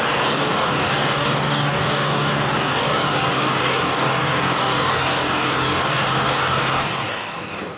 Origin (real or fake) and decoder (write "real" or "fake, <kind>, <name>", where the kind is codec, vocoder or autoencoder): fake, codec, DAC